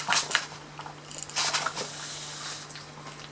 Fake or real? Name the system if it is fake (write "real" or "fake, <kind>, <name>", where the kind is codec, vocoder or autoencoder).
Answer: real